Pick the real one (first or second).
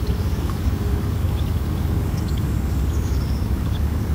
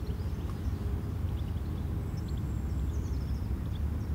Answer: second